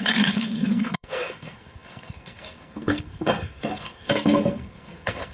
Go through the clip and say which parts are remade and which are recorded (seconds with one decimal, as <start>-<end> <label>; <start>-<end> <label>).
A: 0.0-5.3 remade